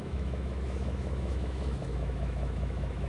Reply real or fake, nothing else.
fake